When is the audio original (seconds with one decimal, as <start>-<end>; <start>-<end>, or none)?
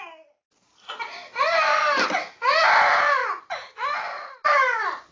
0.0-5.1